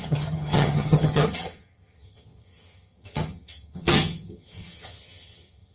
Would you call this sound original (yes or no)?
no